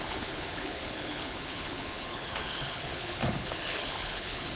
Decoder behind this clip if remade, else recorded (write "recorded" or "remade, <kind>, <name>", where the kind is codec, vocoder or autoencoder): remade, codec, HILCodec